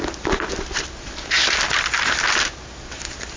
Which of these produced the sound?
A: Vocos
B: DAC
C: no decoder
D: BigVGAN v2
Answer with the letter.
C